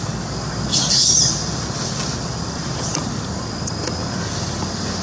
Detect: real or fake fake